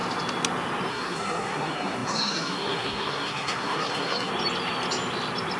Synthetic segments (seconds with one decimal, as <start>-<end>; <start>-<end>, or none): 0.9-4.3